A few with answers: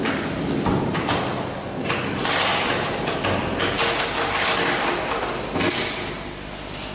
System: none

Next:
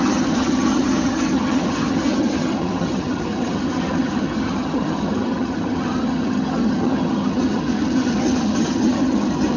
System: vocoder, HiFi-GAN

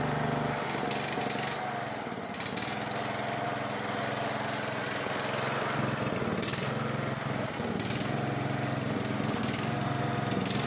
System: none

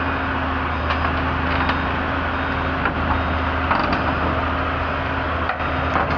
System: none